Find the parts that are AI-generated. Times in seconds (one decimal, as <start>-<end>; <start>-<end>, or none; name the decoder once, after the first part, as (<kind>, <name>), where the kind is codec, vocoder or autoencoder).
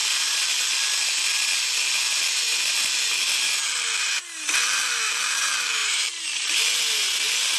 5.8-6.6 (vocoder, BigVGAN v2)